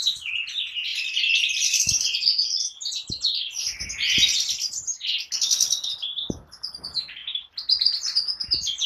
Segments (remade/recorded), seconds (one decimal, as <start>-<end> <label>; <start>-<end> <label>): 0.0-0.9 recorded; 0.9-1.8 remade; 1.8-8.9 recorded